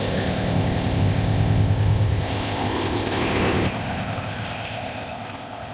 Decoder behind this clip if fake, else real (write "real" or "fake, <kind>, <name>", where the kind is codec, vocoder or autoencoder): fake, codec, ZipCodec